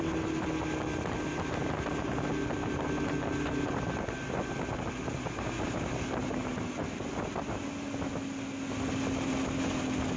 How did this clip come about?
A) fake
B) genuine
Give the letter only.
B